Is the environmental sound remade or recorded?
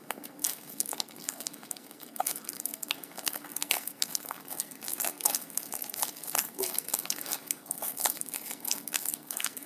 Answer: remade